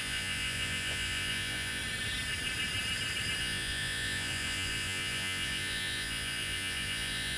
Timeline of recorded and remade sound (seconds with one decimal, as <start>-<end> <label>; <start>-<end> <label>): 0.0-1.8 remade; 1.8-3.4 recorded; 3.4-7.4 remade